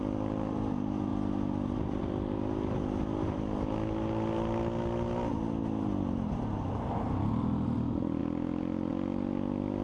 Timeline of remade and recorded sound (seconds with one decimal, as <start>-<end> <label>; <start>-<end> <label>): 0.0-9.8 recorded